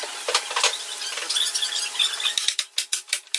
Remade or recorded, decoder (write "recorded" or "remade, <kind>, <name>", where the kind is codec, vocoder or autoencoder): recorded